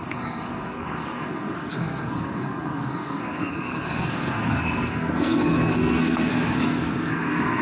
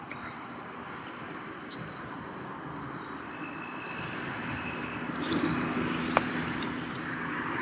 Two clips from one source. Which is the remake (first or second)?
first